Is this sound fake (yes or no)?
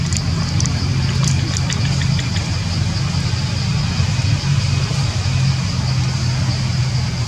no